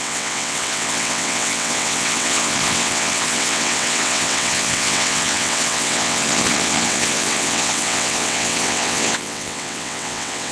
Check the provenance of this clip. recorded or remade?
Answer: remade